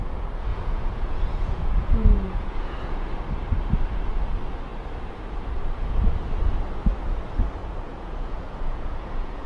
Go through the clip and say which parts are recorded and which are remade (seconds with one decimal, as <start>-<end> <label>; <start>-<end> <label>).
0.0-0.5 recorded; 0.5-3.2 remade; 3.2-7.6 recorded; 7.6-9.5 remade